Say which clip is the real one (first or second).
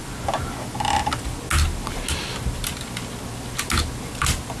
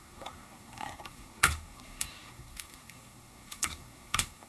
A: first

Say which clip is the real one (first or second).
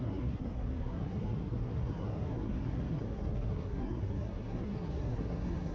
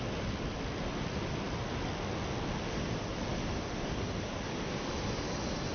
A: second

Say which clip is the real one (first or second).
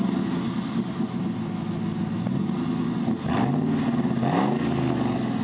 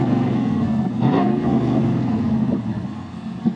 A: first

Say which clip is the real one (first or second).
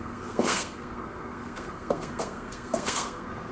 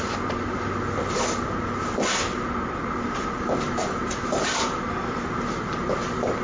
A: second